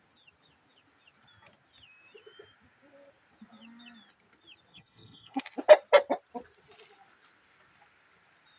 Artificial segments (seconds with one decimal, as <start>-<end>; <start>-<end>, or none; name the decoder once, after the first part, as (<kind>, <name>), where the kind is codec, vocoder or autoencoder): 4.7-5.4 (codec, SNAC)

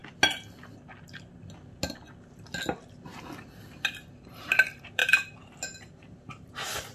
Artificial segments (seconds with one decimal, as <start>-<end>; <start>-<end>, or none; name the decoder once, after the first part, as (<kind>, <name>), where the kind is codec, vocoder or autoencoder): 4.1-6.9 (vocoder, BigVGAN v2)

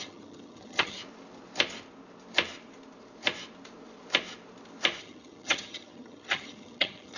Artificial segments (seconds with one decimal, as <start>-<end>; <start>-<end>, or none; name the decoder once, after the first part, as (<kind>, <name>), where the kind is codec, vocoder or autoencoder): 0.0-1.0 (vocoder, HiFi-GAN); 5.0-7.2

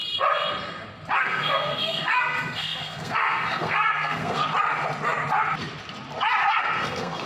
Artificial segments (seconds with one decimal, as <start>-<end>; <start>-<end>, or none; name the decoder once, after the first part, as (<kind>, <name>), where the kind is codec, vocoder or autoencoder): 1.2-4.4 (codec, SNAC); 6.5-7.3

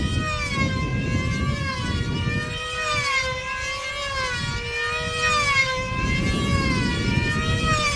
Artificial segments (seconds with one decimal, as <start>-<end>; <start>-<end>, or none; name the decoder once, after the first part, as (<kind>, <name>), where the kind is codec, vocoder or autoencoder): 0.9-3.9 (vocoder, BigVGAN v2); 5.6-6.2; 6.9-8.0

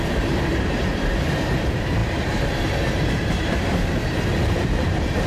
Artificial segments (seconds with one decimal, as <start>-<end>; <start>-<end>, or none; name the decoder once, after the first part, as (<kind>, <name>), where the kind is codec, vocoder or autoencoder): 0.0-5.3 (vocoder, BigVGAN v2)

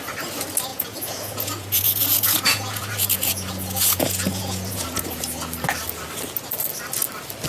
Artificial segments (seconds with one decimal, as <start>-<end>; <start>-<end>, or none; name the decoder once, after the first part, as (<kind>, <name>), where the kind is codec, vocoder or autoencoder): 0.7-5.2 (vocoder, Vocos)

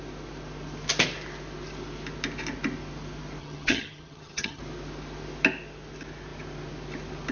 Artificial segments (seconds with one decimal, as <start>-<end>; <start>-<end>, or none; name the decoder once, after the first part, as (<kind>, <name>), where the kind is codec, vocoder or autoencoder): 3.4-4.6 (vocoder, HiFi-GAN)